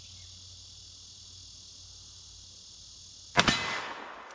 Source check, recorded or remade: recorded